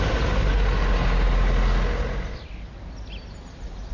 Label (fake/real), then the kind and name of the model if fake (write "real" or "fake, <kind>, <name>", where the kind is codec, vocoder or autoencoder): real